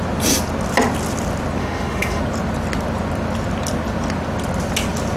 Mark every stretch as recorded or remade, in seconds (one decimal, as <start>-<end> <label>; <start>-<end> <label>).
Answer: 0.0-1.6 recorded; 1.6-2.2 remade; 2.2-5.2 recorded